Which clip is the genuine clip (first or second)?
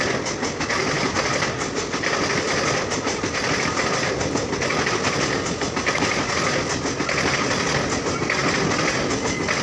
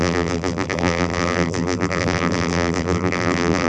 first